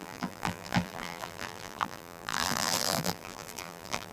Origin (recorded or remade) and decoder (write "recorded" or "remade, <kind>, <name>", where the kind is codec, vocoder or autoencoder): remade, vocoder, BigVGAN v2